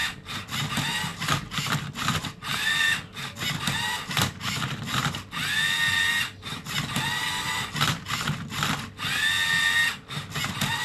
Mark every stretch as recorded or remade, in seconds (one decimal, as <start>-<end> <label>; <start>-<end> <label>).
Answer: 0.0-10.8 recorded